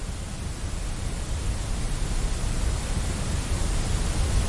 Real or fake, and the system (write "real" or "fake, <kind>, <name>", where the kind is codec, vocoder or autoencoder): real